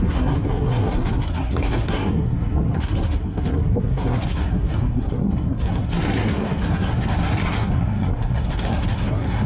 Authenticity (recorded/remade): remade